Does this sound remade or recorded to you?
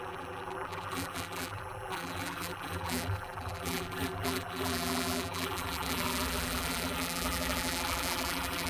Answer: remade